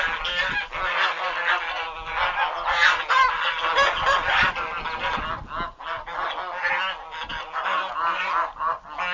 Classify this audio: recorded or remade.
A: recorded